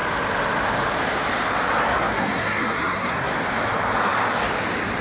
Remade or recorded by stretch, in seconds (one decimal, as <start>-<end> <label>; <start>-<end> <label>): 0.0-1.9 recorded; 1.9-3.3 remade; 3.3-5.0 recorded